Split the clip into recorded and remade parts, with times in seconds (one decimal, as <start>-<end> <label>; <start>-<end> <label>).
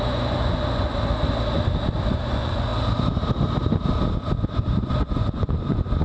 0.0-0.9 remade; 0.9-2.1 recorded; 2.1-2.7 remade; 2.7-4.9 recorded; 4.9-6.0 remade